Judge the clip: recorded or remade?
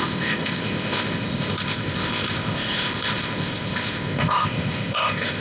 remade